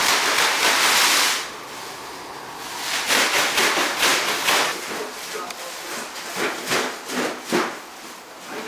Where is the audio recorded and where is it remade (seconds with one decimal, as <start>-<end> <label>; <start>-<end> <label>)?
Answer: 0.0-8.7 recorded